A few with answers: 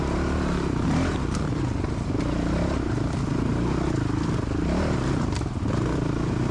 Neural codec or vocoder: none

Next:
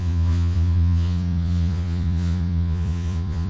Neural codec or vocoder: vocoder, Vocos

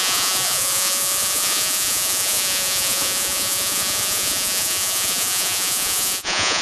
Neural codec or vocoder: vocoder, Vocos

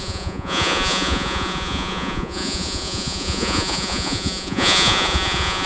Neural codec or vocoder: vocoder, Vocos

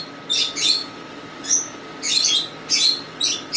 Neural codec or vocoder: none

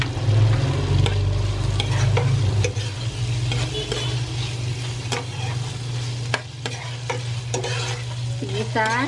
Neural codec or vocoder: none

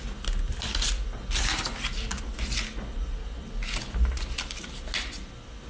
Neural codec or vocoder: none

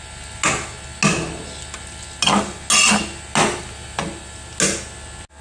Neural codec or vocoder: none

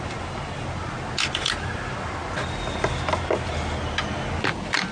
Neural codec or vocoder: none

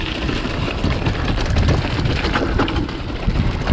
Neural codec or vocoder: none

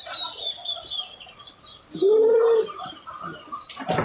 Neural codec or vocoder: none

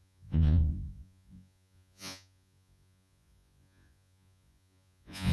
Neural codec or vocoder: vocoder, Vocos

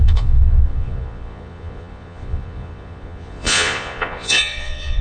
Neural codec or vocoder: vocoder, Vocos